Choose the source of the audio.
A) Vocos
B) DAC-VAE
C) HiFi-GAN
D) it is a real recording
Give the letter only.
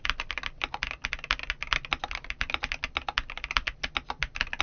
D